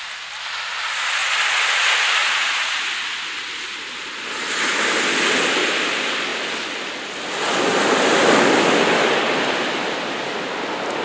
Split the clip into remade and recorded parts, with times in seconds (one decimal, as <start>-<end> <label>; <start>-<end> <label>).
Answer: 0.0-2.2 recorded; 2.2-2.8 remade; 2.8-11.0 recorded